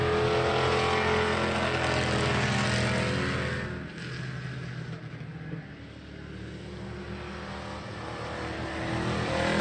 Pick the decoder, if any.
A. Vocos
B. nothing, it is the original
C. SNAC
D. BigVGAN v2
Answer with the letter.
B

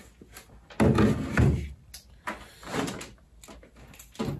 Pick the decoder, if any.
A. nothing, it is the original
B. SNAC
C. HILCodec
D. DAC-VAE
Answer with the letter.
A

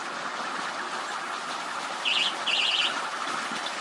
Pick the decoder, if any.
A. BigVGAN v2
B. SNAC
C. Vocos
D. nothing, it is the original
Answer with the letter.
D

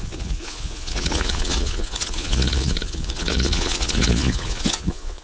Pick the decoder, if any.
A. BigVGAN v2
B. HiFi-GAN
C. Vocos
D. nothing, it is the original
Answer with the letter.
C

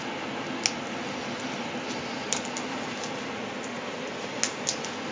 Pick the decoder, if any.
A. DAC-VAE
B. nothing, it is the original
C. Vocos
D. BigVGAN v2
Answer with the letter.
B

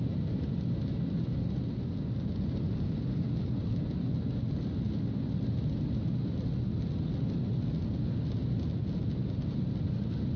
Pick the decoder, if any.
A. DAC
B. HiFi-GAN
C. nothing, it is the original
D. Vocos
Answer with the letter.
C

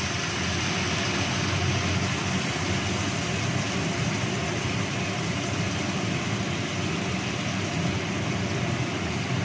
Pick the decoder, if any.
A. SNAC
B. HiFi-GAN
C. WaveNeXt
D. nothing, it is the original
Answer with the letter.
D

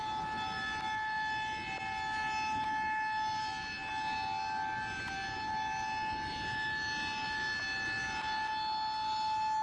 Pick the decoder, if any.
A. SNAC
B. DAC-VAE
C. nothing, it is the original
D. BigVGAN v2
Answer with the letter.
C